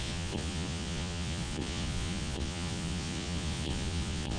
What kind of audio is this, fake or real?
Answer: fake